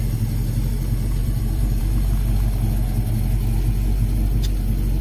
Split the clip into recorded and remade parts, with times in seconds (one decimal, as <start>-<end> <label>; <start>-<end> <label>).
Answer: 0.0-1.2 recorded; 1.2-1.8 remade; 1.8-5.0 recorded